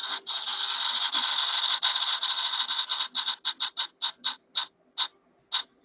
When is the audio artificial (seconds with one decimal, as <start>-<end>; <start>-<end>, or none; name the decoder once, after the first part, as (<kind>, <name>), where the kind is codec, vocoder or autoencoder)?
none